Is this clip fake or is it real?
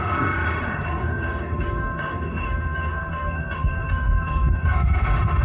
fake